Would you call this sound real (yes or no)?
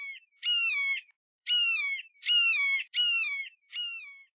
no